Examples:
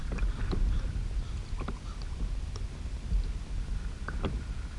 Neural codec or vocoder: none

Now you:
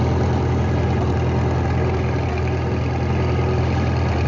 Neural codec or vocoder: none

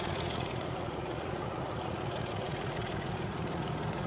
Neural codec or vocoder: vocoder, Vocos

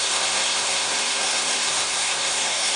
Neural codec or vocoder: codec, SNAC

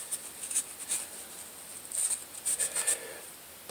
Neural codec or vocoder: none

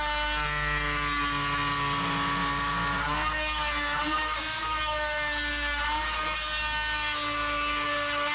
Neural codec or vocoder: none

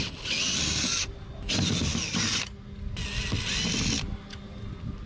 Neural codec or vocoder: none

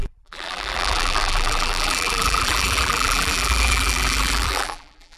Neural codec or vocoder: vocoder, BigVGAN v2